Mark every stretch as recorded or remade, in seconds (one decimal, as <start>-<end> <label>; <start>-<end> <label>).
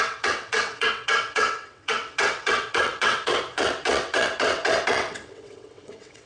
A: 0.0-6.3 remade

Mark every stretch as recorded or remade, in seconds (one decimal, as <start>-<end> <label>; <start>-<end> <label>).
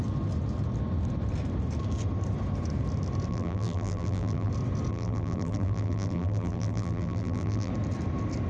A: 0.0-3.3 recorded; 3.3-4.5 remade; 4.5-4.9 recorded; 4.9-7.7 remade; 7.7-8.5 recorded